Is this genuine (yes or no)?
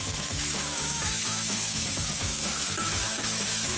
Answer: no